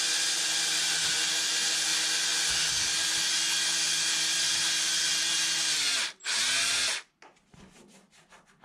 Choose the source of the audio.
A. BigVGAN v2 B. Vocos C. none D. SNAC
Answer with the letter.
C